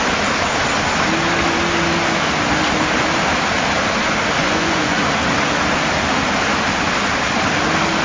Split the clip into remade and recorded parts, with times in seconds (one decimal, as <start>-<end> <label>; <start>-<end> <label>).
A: 0.0-4.4 recorded; 4.4-5.0 remade; 5.0-8.0 recorded